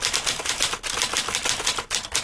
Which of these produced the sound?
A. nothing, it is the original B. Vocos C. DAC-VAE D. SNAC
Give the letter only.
A